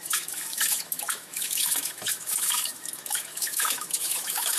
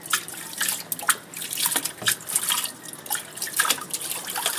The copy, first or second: first